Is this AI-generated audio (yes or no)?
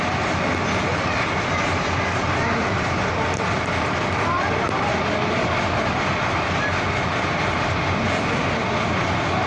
no